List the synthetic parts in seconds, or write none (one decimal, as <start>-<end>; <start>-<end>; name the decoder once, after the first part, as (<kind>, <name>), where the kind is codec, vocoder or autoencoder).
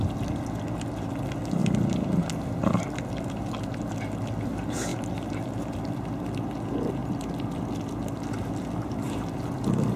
none